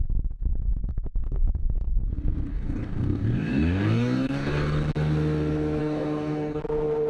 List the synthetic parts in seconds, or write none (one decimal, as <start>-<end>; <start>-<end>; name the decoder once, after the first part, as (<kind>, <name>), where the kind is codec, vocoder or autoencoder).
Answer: 0.8-1.9 (codec, DAC); 2.5-4.5; 5.8-6.6